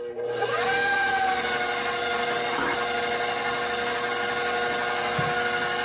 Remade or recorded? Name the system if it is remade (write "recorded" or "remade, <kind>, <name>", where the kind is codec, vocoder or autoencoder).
recorded